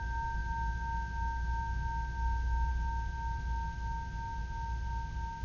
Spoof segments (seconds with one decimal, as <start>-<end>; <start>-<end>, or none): none